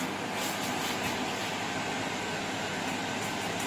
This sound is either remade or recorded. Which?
recorded